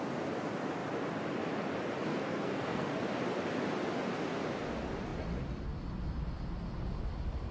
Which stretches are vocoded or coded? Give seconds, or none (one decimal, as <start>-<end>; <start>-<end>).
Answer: 2.1-2.9